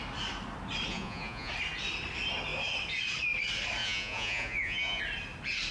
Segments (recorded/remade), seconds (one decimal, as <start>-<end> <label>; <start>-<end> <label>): 0.0-0.9 recorded; 0.9-1.5 remade; 1.5-3.8 recorded; 3.8-5.0 remade; 5.0-5.7 recorded

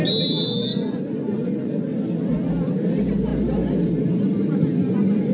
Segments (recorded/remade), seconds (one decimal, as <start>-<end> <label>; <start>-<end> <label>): 0.0-0.7 recorded; 0.7-1.8 remade; 1.8-4.7 recorded; 4.7-5.3 remade